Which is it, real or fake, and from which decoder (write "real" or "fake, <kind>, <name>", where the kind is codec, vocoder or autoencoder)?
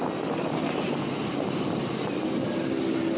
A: real